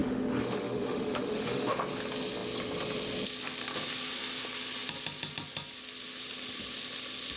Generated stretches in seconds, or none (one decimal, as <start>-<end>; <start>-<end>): 0.0-1.8